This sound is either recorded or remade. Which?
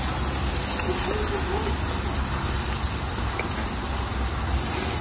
recorded